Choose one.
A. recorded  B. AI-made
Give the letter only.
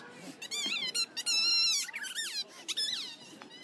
A